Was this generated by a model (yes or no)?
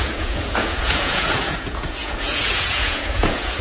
yes